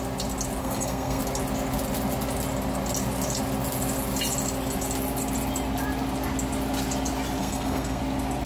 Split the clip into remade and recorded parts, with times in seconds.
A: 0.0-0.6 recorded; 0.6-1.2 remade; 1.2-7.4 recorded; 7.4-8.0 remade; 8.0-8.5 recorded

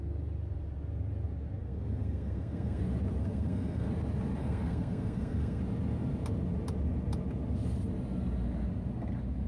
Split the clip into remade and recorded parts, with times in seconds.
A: 0.0-1.6 recorded; 1.6-2.8 remade; 2.8-3.2 recorded; 3.2-3.9 remade; 3.9-4.4 recorded; 4.4-5.6 remade; 5.6-9.5 recorded